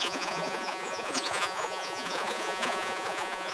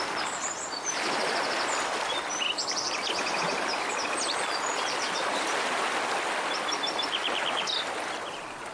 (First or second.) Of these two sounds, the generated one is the first